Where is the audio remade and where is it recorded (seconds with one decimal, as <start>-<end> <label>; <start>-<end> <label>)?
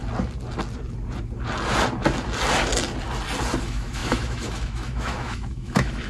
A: 0.0-3.6 recorded; 3.6-6.1 remade